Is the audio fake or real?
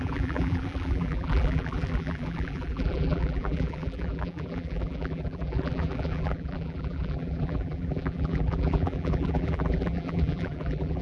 fake